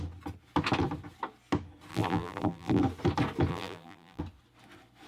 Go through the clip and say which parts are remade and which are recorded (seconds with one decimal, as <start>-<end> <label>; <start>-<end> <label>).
0.0-1.9 recorded; 1.9-2.8 remade; 2.8-3.5 recorded; 3.5-4.2 remade; 4.2-5.1 recorded